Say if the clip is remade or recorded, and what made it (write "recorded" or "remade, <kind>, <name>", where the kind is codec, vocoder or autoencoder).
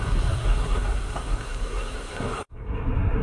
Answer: remade, codec, SNAC